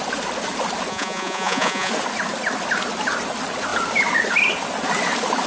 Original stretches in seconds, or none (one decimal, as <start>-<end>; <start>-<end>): 0.0-0.9; 1.9-5.5

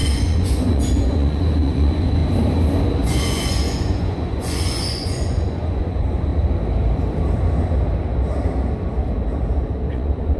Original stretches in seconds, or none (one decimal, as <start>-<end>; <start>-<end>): 2.2-3.0; 6.3-9.9